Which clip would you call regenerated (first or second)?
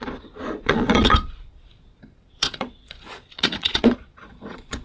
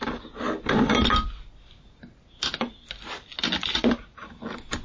first